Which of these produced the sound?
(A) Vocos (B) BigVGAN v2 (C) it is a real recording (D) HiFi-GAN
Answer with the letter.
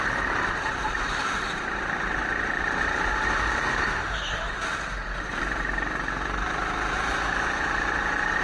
B